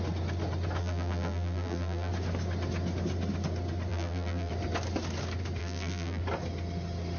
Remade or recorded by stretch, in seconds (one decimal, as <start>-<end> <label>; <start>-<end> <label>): 0.0-0.8 recorded; 0.8-2.1 remade; 2.1-3.9 recorded; 3.9-4.5 remade; 4.5-5.6 recorded; 5.6-6.2 remade; 6.2-7.2 recorded